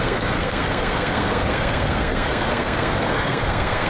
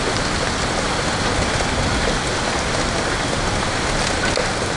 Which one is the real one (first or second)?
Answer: second